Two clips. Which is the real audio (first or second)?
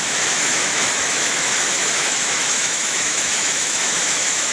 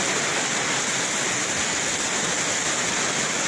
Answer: second